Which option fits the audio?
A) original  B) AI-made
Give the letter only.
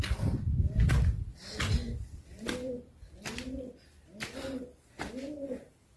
A